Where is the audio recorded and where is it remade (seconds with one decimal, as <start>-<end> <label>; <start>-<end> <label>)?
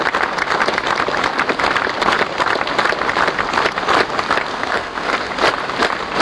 0.0-4.5 recorded; 4.5-5.3 remade; 5.3-6.2 recorded